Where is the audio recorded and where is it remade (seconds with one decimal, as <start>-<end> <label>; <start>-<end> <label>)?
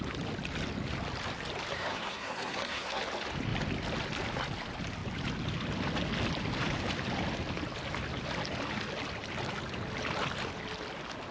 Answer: 0.0-1.7 recorded; 1.7-3.0 remade; 3.0-11.3 recorded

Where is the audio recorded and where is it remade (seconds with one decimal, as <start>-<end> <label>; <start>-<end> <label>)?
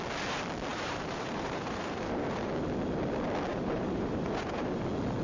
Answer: 0.0-0.7 recorded; 0.7-2.5 remade; 2.5-3.5 recorded; 3.5-4.8 remade; 4.8-5.2 recorded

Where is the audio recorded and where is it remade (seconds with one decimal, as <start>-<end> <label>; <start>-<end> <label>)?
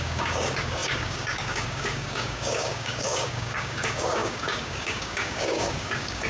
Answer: 0.0-6.3 remade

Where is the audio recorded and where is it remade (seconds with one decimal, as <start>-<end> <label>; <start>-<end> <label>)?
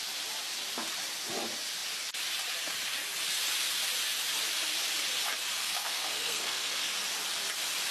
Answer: 0.0-5.6 recorded; 5.6-6.9 remade; 6.9-7.9 recorded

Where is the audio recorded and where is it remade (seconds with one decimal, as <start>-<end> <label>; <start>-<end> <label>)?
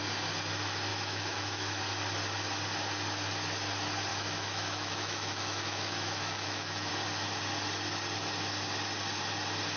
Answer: 0.0-0.9 recorded; 0.9-1.8 remade; 1.8-4.1 recorded; 4.1-6.9 remade; 6.9-9.8 recorded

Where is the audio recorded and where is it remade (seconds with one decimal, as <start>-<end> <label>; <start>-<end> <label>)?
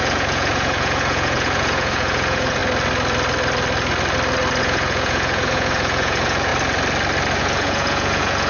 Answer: 0.0-2.6 remade; 2.6-4.6 recorded; 4.6-6.5 remade; 6.5-7.4 recorded; 7.4-8.5 remade